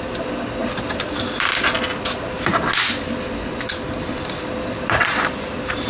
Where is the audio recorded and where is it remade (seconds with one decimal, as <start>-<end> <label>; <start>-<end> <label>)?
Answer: 0.0-0.6 remade; 0.6-1.1 recorded; 1.1-2.5 remade; 2.5-4.4 recorded; 4.4-5.9 remade